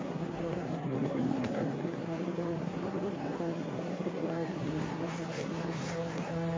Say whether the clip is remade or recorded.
remade